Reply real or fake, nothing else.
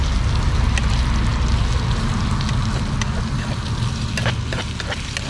real